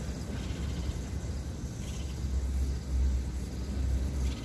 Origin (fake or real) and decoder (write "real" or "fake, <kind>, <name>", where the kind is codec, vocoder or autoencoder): real